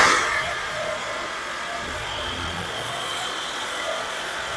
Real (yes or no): no